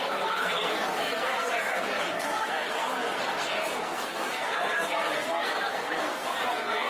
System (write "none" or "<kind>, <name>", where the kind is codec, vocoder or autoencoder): codec, SNAC